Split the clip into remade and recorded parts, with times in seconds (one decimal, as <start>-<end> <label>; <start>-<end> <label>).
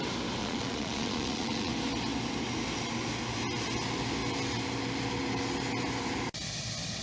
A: 0.0-0.4 recorded; 0.4-1.7 remade; 1.7-7.0 recorded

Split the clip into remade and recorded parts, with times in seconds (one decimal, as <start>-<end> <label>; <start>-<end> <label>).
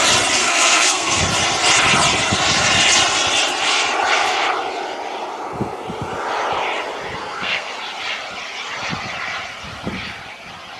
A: 0.0-0.4 recorded; 0.4-1.2 remade; 1.2-7.2 recorded; 7.2-7.7 remade; 7.7-10.8 recorded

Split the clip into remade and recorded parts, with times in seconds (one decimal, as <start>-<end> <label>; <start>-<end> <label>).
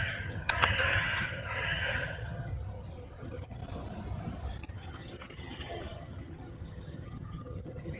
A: 0.0-2.5 remade; 2.5-3.2 recorded; 3.2-3.6 remade; 3.6-4.7 recorded; 4.7-8.0 remade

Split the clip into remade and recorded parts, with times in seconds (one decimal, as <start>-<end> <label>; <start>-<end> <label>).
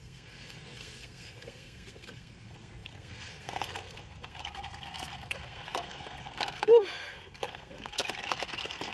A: 0.0-8.9 remade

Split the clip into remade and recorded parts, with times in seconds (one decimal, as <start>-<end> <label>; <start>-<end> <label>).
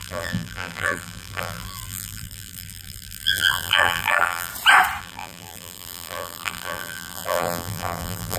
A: 0.0-4.5 remade; 4.5-5.0 recorded; 5.0-8.4 remade